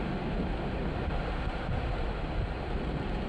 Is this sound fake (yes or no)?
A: no